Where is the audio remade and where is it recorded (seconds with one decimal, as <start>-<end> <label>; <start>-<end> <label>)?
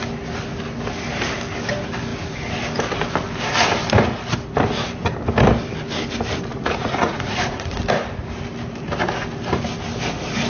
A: 0.0-6.5 recorded; 6.5-7.8 remade; 7.8-10.5 recorded